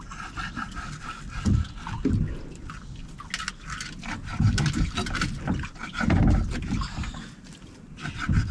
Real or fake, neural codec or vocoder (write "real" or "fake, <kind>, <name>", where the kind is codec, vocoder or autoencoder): real